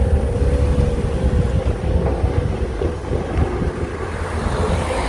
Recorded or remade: recorded